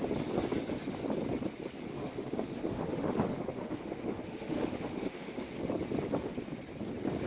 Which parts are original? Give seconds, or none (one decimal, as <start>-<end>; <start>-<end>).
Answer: 0.0-1.9; 5.5-7.3